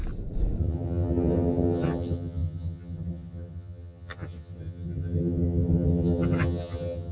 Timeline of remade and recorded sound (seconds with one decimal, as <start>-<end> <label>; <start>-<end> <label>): 0.0-0.6 recorded; 0.6-7.1 remade